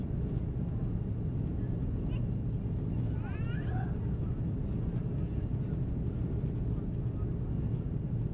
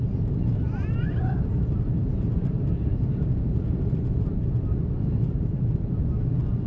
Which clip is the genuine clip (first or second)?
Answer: first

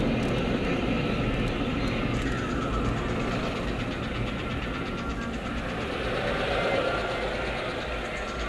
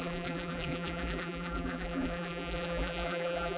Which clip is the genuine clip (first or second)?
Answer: first